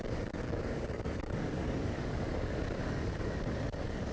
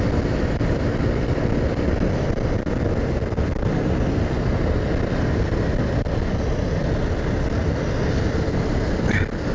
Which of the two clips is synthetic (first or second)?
first